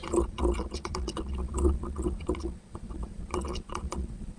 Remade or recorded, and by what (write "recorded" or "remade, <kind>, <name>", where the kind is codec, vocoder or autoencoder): remade, vocoder, Vocos